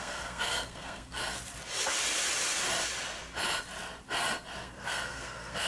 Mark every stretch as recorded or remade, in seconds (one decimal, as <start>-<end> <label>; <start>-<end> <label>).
0.0-1.2 remade; 1.2-4.6 recorded; 4.6-5.7 remade